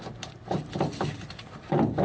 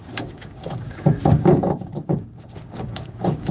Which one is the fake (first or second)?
second